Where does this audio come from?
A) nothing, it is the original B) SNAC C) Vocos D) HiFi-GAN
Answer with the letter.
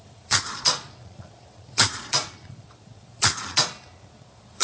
C